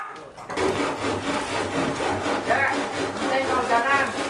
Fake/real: real